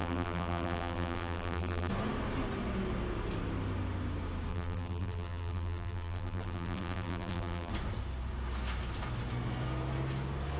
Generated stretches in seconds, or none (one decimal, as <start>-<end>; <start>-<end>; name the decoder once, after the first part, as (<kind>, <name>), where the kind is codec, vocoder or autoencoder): 0.0-1.9 (vocoder, BigVGAN v2); 4.5-7.7